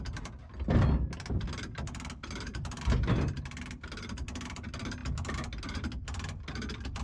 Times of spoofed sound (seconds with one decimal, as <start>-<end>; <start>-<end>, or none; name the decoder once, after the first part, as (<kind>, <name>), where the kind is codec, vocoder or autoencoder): none